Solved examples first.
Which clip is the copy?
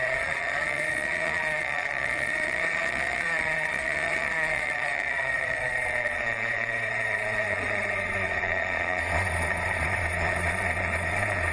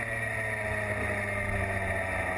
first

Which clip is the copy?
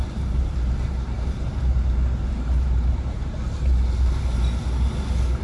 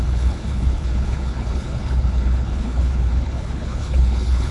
second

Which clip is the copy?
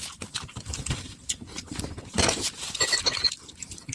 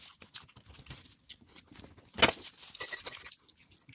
first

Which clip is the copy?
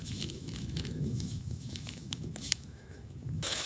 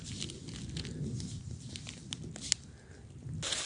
first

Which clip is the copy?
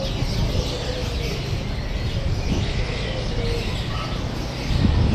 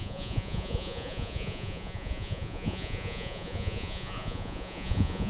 second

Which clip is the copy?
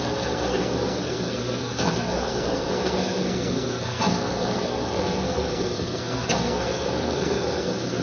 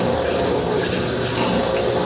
first